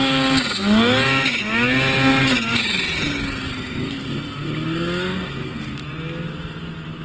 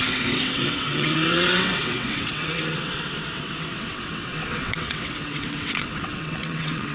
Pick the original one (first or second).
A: first